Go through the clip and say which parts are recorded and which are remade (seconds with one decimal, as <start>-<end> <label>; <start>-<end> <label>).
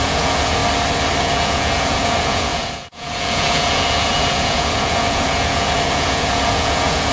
0.0-0.6 remade; 0.6-1.2 recorded; 1.2-7.1 remade